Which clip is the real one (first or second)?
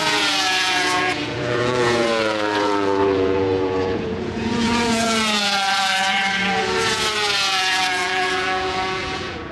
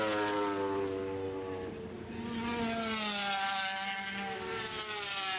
second